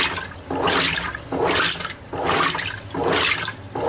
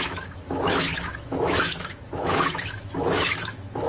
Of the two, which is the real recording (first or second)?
first